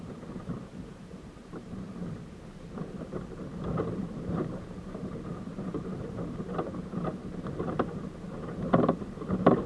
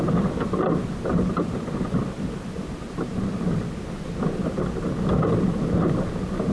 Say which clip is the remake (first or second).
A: first